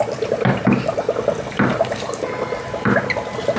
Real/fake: real